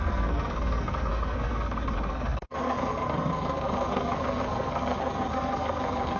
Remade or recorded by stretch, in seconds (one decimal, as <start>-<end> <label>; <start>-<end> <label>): 0.0-6.2 remade